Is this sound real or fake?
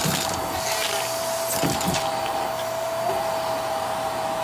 real